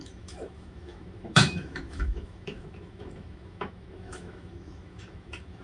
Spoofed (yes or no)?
yes